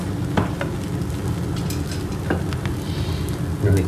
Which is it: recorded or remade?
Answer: recorded